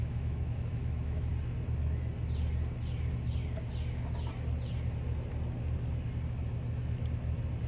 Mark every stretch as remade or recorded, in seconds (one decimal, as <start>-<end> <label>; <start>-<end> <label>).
0.0-1.3 remade; 1.3-7.7 recorded